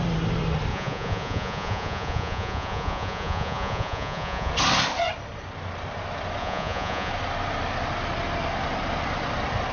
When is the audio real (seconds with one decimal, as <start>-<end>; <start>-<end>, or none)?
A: 0.0-0.7; 4.5-6.4; 7.1-9.7